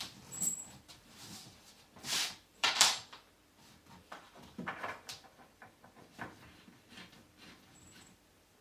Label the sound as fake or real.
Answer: fake